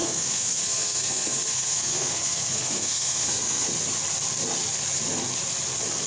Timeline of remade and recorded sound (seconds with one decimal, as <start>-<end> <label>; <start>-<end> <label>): 0.0-3.7 remade; 3.7-6.1 recorded

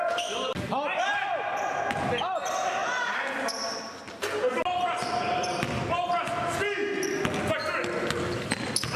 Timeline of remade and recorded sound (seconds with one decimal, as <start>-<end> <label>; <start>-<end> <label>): 0.0-9.0 recorded